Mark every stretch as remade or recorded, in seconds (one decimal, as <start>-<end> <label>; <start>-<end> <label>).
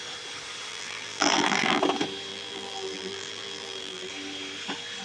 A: 0.0-0.7 recorded; 0.7-1.8 remade; 1.8-2.3 recorded; 2.3-4.1 remade; 4.1-5.0 recorded